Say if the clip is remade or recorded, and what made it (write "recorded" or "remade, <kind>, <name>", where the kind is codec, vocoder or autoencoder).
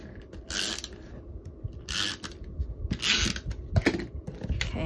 recorded